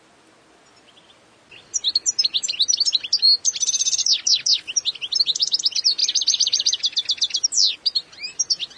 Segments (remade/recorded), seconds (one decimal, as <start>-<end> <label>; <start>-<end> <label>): 0.0-8.8 recorded